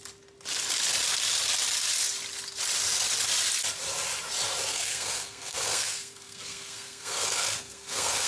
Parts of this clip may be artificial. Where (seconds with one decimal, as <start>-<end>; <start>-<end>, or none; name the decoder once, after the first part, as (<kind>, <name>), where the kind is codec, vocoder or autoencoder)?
4.7-8.3 (codec, SNAC)